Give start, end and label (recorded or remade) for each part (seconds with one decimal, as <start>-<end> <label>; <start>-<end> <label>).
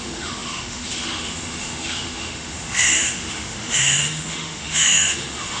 0.0-5.6 remade